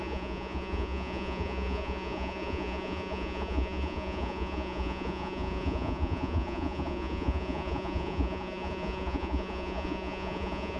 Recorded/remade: remade